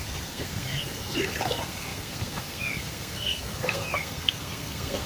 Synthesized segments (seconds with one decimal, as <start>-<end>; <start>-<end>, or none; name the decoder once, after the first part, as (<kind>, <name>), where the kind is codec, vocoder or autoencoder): 0.0-5.1 (codec, SNAC)